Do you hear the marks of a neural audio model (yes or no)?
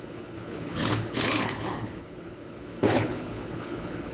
yes